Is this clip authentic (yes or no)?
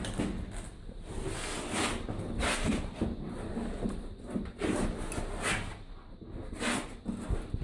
yes